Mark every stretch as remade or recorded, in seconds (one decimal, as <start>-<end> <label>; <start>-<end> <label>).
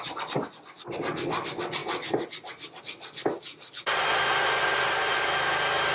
0.0-5.9 recorded